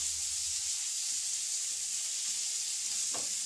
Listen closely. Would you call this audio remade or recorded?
recorded